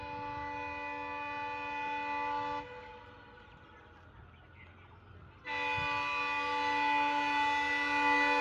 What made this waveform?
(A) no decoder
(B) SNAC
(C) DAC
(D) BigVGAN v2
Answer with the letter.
A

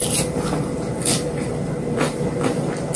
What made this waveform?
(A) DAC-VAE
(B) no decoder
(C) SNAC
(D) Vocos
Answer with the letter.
B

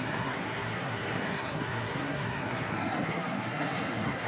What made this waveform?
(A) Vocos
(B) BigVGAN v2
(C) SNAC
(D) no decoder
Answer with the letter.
C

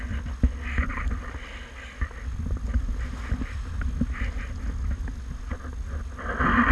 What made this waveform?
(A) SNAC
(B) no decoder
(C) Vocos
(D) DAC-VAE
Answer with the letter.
B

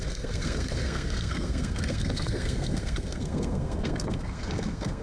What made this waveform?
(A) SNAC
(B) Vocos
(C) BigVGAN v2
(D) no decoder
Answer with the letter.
A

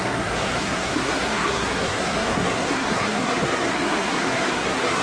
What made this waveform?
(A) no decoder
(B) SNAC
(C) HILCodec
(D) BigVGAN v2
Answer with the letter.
B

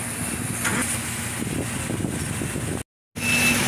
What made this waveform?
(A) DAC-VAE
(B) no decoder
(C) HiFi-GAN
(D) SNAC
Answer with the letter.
B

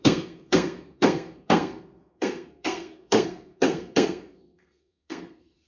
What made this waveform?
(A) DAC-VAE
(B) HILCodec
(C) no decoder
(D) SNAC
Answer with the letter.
D